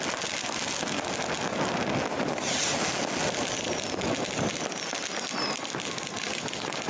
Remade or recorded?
recorded